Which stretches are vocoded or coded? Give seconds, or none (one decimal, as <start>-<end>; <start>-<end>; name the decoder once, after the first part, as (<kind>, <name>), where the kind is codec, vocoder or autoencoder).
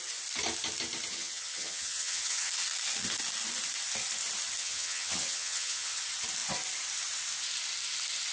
1.1-2.5 (vocoder, HiFi-GAN); 4.6-6.0